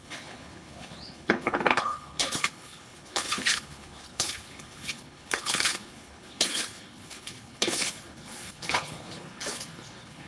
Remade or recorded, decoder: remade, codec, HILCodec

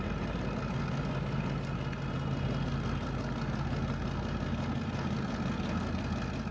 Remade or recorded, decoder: recorded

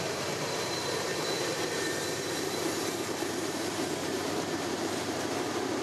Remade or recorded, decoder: remade, vocoder, BigVGAN v2